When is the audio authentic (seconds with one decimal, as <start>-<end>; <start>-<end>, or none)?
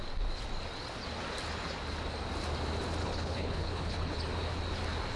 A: 0.0-3.0; 4.2-5.2